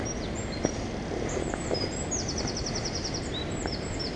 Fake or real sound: real